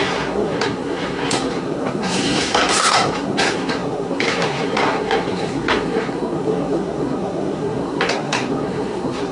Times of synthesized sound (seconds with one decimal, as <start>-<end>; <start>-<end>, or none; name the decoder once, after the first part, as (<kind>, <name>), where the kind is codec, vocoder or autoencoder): 0.0-9.3 (codec, SNAC)

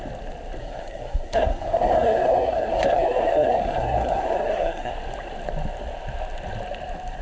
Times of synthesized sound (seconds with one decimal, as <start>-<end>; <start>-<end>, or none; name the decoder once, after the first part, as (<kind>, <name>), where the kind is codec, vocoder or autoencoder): 0.6-4.9 (codec, SNAC)

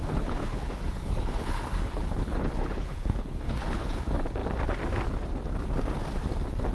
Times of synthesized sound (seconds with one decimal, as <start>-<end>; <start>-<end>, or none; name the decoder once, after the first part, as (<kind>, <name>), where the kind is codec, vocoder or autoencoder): 0.0-4.0 (codec, HILCodec)